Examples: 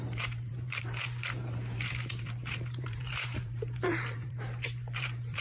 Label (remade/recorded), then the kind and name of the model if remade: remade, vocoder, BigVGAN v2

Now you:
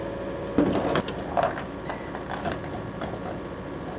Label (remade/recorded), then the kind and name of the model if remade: recorded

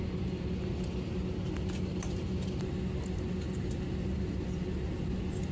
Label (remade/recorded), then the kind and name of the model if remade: recorded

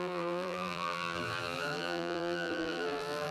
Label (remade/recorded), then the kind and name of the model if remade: remade, vocoder, BigVGAN v2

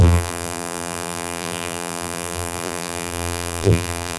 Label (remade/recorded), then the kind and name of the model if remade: remade, vocoder, BigVGAN v2